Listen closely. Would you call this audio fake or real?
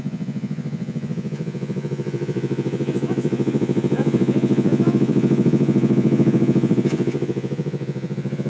fake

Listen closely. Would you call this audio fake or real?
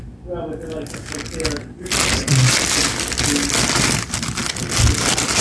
real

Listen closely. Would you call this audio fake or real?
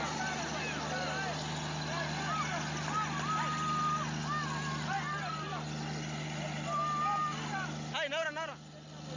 real